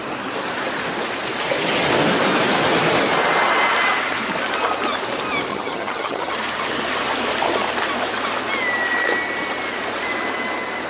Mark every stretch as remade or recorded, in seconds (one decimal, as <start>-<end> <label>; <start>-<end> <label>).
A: 0.0-5.5 recorded; 5.5-6.3 remade; 6.3-10.9 recorded